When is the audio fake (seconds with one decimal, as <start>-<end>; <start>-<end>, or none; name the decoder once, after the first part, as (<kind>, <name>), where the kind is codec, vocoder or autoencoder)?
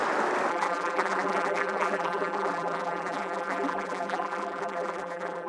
0.5-5.5 (vocoder, BigVGAN v2)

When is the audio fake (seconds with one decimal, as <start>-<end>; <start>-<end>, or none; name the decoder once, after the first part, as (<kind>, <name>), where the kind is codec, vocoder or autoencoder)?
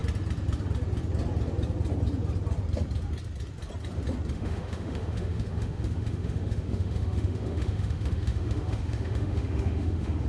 4.3-10.3 (autoencoder, DAC-VAE)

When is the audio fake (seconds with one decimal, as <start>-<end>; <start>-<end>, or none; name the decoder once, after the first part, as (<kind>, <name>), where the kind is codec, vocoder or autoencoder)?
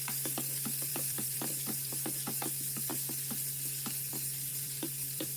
0.9-1.9 (vocoder, BigVGAN v2); 4.5-5.4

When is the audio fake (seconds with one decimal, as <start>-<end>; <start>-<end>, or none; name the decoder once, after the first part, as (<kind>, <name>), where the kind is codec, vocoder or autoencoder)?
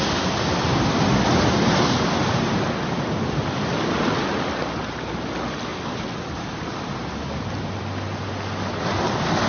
none